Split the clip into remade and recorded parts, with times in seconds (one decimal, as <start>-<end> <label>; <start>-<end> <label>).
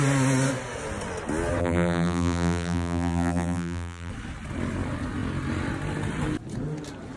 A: 0.0-1.6 recorded; 1.6-4.1 remade; 4.1-7.2 recorded